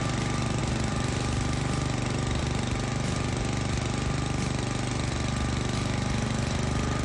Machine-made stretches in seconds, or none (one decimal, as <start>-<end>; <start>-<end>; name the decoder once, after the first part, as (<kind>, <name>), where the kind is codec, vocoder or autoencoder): 0.6-2.4 (vocoder, BigVGAN v2)

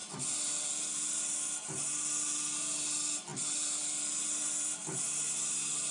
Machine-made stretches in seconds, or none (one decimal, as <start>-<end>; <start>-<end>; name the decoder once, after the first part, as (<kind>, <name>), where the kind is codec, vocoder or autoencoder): none

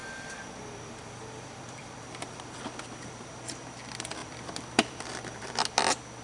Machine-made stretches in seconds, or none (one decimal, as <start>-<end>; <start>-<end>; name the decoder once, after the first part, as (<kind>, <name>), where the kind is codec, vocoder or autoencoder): 0.0-3.7 (vocoder, BigVGAN v2); 4.2-5.6

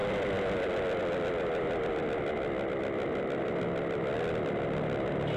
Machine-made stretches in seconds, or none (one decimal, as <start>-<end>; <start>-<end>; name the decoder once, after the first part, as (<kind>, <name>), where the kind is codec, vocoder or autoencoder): none